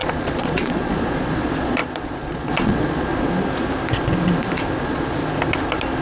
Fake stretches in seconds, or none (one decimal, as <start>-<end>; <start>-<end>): 0.0-3.1; 4.8-5.2